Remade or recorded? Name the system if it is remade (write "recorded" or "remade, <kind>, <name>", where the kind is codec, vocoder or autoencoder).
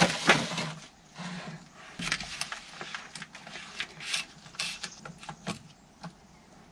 recorded